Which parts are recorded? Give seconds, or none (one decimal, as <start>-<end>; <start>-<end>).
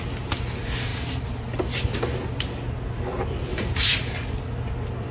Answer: 0.0-3.5; 4.4-5.1